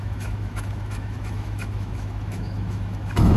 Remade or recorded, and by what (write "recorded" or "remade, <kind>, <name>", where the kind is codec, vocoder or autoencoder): remade, autoencoder, DAC-VAE